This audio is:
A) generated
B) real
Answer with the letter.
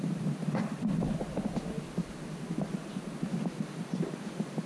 A